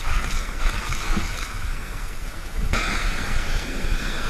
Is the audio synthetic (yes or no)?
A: yes